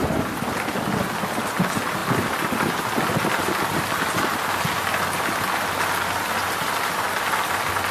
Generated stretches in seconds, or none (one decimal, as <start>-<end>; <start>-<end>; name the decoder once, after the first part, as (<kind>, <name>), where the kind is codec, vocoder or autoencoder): none